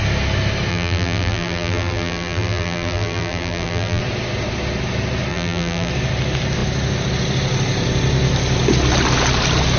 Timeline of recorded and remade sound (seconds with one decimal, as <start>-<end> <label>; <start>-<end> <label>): 0.0-0.7 recorded; 0.7-4.0 remade; 4.0-5.3 recorded; 5.3-5.9 remade; 5.9-9.8 recorded